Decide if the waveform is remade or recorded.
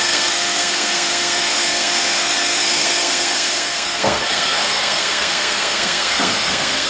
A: remade